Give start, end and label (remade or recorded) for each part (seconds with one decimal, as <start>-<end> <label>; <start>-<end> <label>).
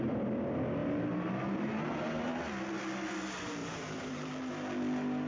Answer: 0.0-0.8 recorded; 0.8-2.3 remade; 2.3-3.6 recorded; 3.6-4.5 remade; 4.5-5.3 recorded